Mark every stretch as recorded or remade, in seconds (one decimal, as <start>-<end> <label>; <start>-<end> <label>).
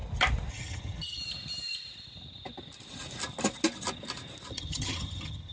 0.0-0.5 recorded; 0.5-1.2 remade; 1.2-4.5 recorded; 4.5-5.5 remade